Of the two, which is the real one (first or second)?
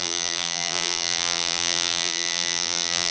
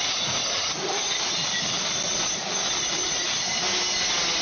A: second